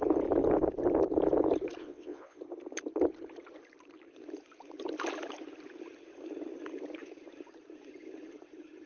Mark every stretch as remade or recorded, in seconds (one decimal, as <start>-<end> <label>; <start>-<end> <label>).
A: 0.0-1.8 recorded; 1.8-2.4 remade; 2.4-8.9 recorded